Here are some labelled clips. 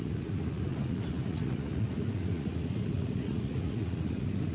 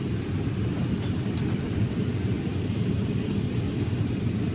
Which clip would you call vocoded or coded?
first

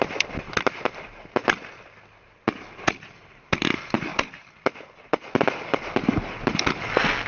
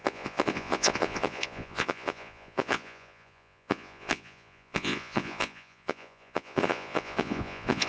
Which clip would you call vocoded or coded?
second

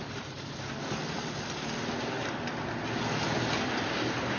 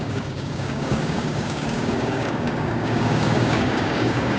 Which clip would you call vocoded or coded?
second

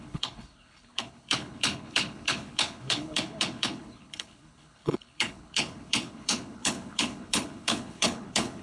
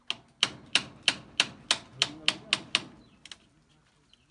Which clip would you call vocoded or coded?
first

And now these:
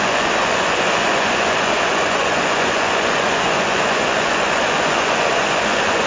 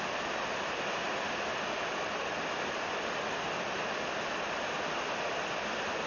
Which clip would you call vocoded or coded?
first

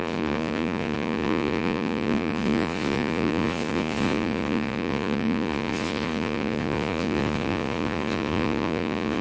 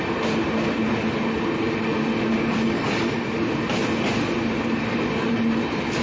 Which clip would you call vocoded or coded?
first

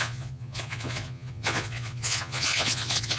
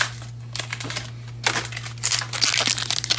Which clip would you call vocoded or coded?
first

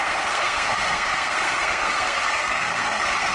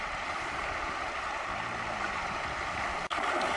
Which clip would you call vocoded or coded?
first